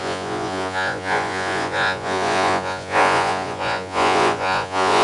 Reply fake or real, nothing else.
fake